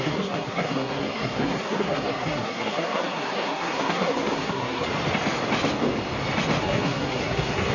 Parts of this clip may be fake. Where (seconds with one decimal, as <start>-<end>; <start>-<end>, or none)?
0.0-4.9; 6.6-7.7